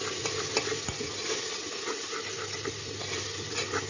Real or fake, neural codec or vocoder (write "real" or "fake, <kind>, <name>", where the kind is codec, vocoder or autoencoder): real